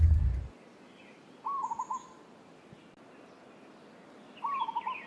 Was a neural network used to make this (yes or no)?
no